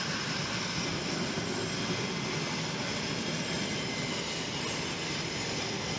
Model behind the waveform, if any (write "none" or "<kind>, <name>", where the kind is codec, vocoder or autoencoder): none